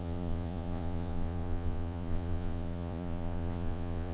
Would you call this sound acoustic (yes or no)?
no